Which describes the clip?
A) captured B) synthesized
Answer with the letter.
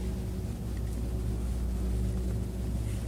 A